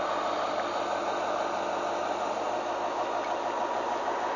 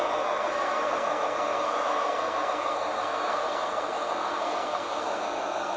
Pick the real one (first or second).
first